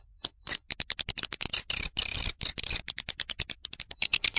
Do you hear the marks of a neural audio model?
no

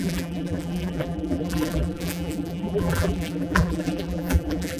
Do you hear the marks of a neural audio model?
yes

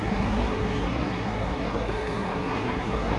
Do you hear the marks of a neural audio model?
yes